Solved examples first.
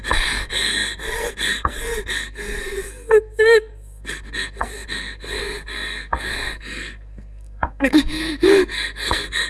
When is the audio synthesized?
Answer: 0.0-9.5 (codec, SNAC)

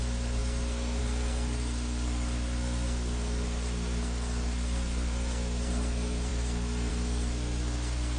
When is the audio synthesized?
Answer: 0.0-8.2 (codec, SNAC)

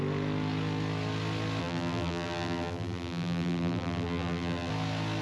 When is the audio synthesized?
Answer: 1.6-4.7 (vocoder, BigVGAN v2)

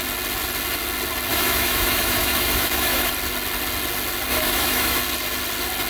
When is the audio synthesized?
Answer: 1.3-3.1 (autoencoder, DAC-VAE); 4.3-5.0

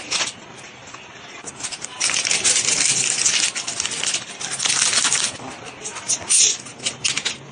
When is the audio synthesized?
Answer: 1.7-3.3 (vocoder, BigVGAN v2)

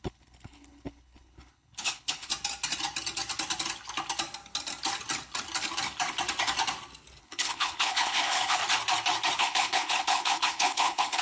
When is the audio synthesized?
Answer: 0.0-2.3 (codec, HILCodec); 7.2-8.6; 9.4-11.2